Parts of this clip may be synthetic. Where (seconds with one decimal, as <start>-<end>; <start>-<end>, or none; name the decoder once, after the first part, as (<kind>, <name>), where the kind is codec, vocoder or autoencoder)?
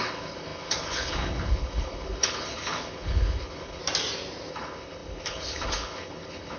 0.0-3.8 (codec, HILCodec); 4.5-6.6